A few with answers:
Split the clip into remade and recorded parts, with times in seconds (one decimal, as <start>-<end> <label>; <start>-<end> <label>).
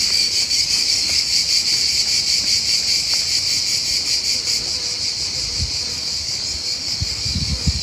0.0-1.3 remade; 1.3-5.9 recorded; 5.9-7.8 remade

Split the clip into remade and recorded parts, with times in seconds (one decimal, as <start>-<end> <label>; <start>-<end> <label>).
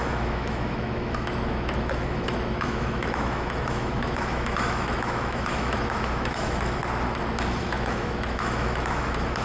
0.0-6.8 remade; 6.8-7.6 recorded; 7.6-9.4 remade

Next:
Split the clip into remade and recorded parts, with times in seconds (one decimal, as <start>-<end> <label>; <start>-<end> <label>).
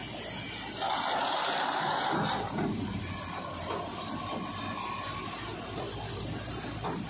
0.0-7.1 recorded